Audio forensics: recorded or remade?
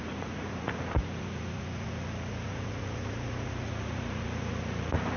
remade